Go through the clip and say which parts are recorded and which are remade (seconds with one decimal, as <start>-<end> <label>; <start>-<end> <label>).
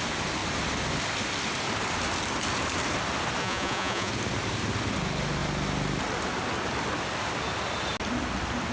0.0-3.4 recorded; 3.4-4.1 remade; 4.1-8.7 recorded